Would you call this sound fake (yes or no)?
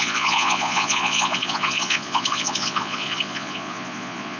yes